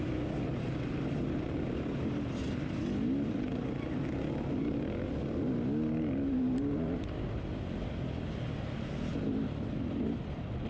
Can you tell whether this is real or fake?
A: real